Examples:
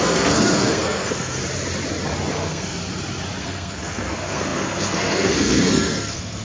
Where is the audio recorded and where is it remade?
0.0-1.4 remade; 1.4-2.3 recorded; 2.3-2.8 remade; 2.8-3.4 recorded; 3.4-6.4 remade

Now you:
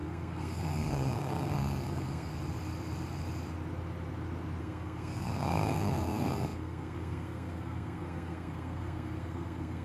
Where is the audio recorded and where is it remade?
0.0-2.3 remade; 2.3-4.6 recorded; 4.6-9.8 remade

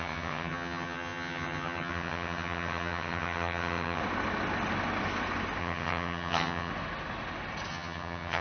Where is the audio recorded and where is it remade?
0.0-4.0 remade; 4.0-5.6 recorded; 5.6-6.7 remade; 6.7-7.7 recorded; 7.7-8.4 remade

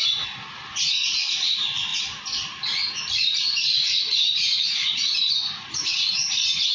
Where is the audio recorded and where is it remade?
0.0-3.6 recorded; 3.6-6.7 remade